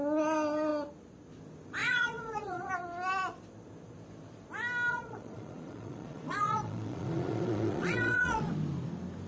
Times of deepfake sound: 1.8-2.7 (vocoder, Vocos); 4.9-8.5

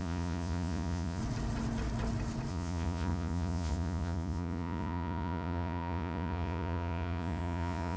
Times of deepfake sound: 0.0-1.2 (vocoder, Vocos); 2.5-8.0

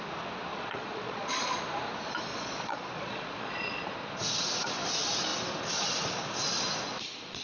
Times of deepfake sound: 0.5-1.6 (vocoder, Vocos); 2.3-3.8

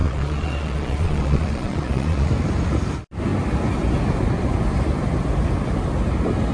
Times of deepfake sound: 0.0-2.3 (vocoder, Vocos)

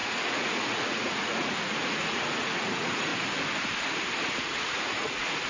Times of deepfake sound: 0.0-3.1 (vocoder, Vocos); 4.3-5.5

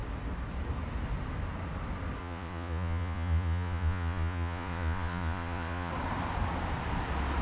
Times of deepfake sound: 2.2-5.9 (vocoder, Vocos)

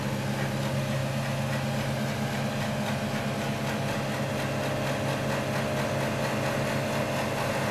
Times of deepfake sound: none

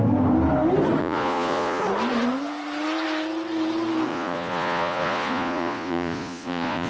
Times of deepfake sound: 1.0-1.8 (vocoder, Vocos); 4.1-6.9